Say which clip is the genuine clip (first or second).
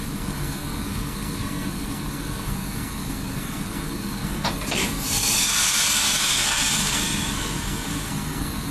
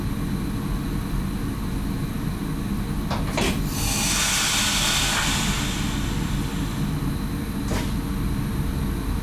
second